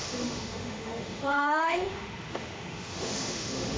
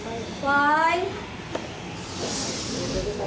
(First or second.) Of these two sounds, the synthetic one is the first